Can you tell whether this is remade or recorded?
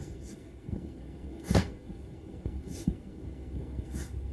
remade